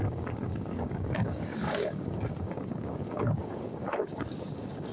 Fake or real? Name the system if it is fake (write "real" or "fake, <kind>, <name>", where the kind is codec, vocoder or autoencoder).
fake, codec, DAC